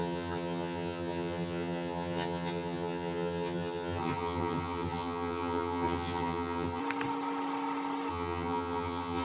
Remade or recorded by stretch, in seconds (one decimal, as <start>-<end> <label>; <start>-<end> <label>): 0.0-6.8 remade; 6.8-8.1 recorded; 8.1-9.2 remade